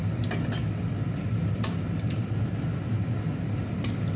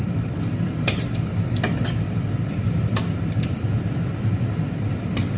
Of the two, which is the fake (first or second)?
second